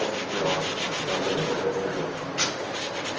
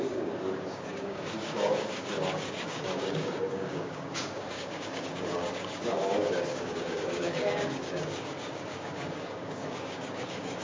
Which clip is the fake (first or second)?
second